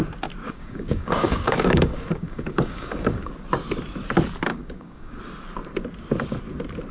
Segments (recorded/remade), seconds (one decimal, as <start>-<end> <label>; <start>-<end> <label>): 0.0-0.4 recorded; 0.4-3.3 remade; 3.3-4.5 recorded; 4.5-5.2 remade; 5.2-6.9 recorded

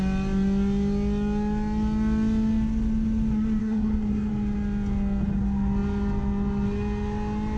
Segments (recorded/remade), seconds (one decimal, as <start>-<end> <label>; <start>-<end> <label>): 0.0-3.6 recorded; 3.6-4.3 remade; 4.3-7.6 recorded

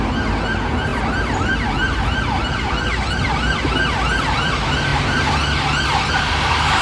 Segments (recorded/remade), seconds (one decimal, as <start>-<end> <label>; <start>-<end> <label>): 0.0-6.8 recorded

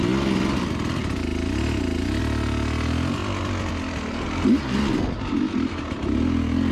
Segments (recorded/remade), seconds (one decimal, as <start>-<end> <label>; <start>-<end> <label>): 0.0-6.7 recorded

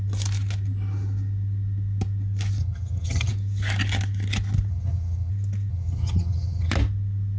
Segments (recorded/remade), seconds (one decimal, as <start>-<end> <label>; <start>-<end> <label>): 0.0-2.6 recorded; 2.6-3.3 remade; 3.3-4.7 recorded; 4.7-5.3 remade; 5.3-5.7 recorded; 5.7-6.7 remade; 6.7-7.4 recorded

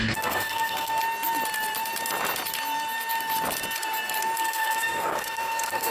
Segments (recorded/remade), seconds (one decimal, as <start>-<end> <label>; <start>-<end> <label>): 0.0-1.0 remade; 1.0-4.4 recorded; 4.4-5.9 remade

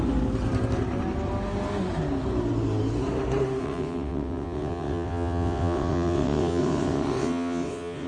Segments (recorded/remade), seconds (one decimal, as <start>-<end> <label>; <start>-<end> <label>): 0.0-3.6 recorded; 3.6-8.1 remade

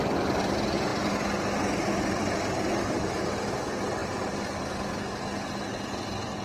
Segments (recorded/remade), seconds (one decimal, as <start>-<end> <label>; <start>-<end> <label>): 0.0-6.4 recorded